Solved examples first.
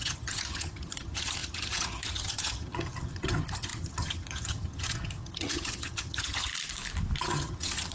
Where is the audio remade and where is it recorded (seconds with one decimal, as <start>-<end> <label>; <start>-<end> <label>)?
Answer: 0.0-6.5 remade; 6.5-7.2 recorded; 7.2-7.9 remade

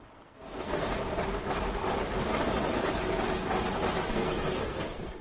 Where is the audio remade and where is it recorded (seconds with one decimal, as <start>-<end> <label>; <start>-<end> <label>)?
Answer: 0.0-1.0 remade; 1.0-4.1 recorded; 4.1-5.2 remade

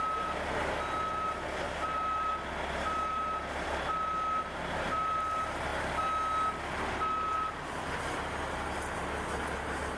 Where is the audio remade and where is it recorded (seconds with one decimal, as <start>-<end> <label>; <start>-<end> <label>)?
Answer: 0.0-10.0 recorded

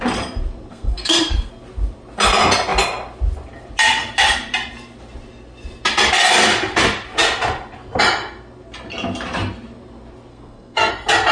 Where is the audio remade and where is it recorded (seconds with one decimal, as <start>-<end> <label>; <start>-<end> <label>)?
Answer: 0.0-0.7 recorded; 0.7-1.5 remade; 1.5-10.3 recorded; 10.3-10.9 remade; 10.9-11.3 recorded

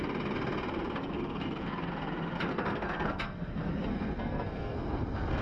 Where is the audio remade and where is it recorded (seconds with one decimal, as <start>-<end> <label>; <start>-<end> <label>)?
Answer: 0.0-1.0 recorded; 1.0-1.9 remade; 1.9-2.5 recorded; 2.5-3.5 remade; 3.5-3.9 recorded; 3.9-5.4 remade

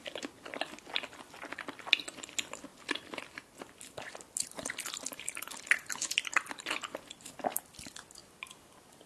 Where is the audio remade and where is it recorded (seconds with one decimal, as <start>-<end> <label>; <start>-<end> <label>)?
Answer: 0.0-9.1 recorded